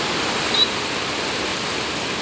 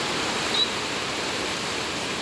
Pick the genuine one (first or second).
first